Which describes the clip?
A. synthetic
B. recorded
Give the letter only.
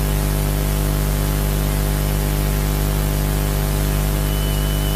B